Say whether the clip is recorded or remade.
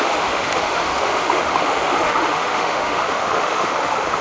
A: remade